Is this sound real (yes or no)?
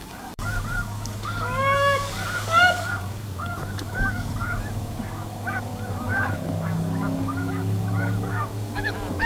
no